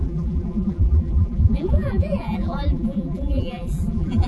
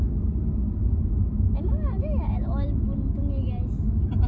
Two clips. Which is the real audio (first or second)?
second